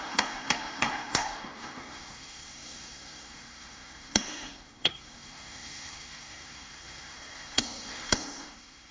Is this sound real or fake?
fake